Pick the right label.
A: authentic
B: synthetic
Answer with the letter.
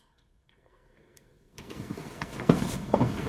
B